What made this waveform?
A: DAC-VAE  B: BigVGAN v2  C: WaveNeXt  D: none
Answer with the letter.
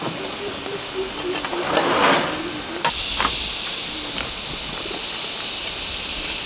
D